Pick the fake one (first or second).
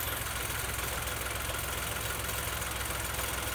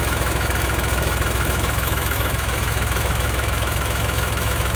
second